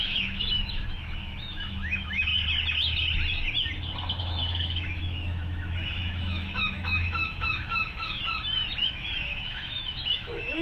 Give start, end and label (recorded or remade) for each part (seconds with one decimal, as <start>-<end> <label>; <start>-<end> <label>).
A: 0.0-2.3 remade; 2.3-4.2 recorded; 4.2-8.2 remade; 8.2-8.8 recorded; 8.8-10.6 remade